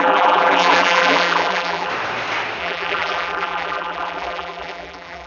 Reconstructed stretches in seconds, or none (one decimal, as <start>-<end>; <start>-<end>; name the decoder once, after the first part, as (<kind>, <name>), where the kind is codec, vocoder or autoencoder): 0.0-1.9 (vocoder, BigVGAN v2); 2.6-5.3